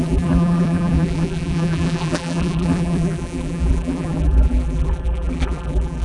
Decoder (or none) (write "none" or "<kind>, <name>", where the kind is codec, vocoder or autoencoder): vocoder, BigVGAN v2